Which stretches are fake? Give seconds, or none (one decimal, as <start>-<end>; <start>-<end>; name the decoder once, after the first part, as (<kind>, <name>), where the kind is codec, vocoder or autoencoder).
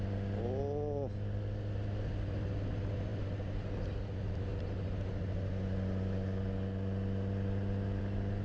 none